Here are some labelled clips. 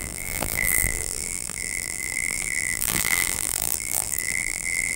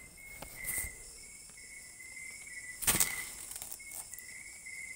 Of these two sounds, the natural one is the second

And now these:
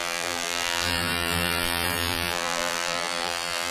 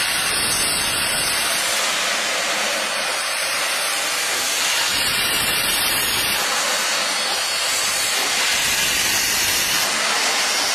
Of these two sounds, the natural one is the second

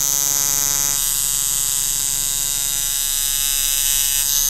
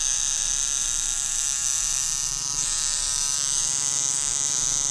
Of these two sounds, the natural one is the first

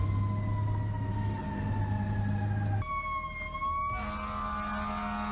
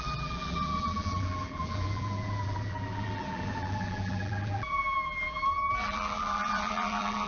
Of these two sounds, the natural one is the first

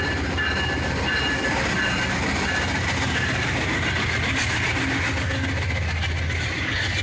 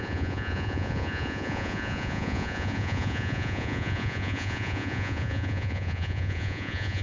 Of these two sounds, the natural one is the first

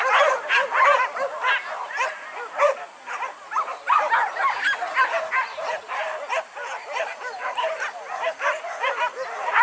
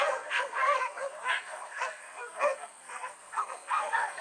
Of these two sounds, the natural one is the first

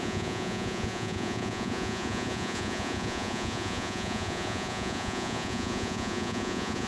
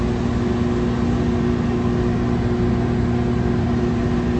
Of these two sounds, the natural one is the second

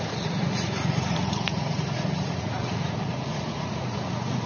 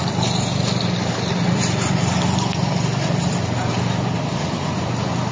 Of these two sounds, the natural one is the second